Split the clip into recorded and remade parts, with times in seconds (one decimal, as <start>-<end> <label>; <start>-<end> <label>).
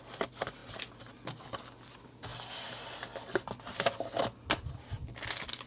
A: 0.0-5.7 recorded